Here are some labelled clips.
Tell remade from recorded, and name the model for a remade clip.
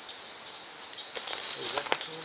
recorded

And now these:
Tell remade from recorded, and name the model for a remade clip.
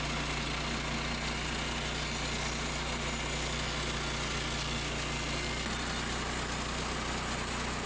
recorded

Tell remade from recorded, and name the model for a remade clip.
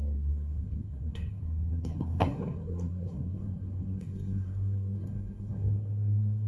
remade, codec, SNAC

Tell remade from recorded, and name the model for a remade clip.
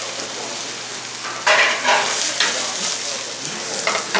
recorded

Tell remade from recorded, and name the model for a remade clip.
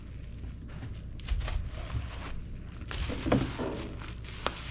recorded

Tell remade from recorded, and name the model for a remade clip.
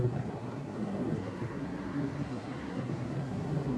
remade, codec, SNAC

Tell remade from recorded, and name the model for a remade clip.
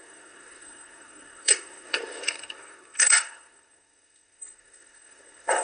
remade, codec, SNAC